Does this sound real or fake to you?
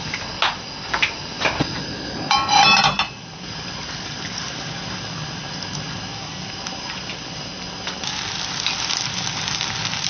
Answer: real